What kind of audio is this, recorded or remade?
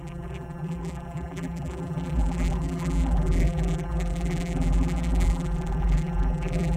remade